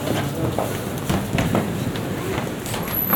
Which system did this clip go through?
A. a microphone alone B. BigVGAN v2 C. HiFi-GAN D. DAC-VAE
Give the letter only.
A